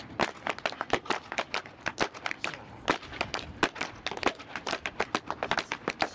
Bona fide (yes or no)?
yes